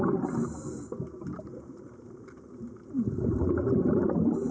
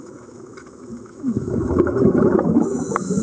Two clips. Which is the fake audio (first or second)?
second